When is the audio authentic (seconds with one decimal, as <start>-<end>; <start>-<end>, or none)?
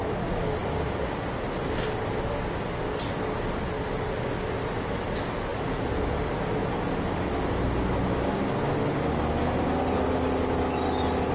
0.0-5.5; 6.1-6.6; 7.3-11.3